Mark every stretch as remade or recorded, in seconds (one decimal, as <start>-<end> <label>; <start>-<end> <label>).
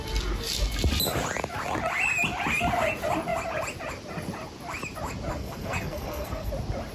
0.0-5.3 recorded; 5.3-6.5 remade; 6.5-6.9 recorded